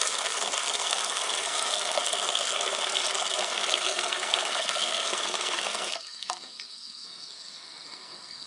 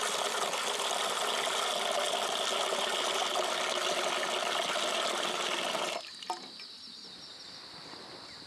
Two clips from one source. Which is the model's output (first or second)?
first